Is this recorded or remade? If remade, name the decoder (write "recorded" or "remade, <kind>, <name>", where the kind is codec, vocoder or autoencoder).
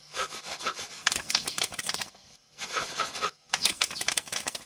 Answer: remade, codec, SNAC